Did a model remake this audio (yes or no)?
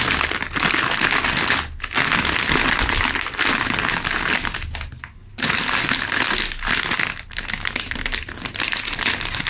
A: no